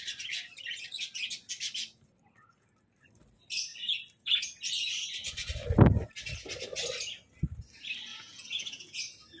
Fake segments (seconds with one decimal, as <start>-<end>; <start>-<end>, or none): 8.1-9.0